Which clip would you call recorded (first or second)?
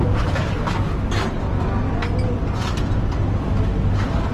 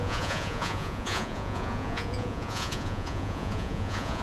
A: first